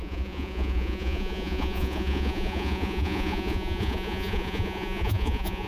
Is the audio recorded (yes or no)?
no